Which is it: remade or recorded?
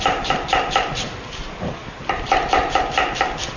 recorded